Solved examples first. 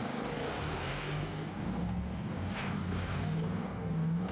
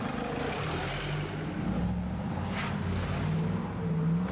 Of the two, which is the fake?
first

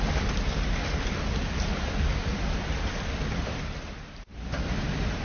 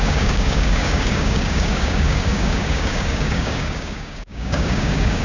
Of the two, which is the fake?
second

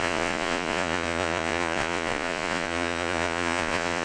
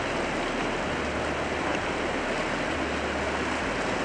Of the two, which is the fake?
first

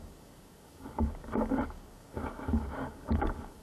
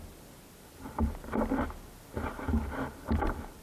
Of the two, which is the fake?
first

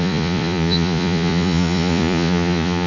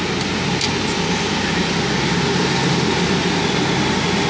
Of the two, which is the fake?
first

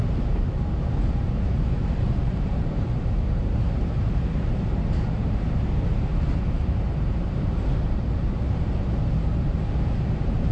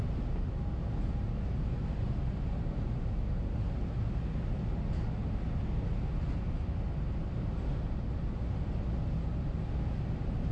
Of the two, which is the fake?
first